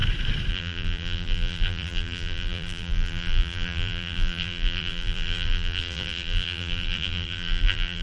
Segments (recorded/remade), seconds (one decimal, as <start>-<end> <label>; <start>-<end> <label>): 0.0-0.5 recorded; 0.5-8.0 remade